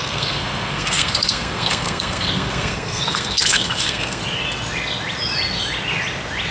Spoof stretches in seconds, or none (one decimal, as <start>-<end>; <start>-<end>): 0.0-4.2